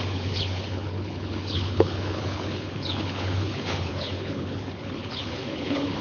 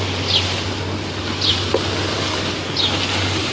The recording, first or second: second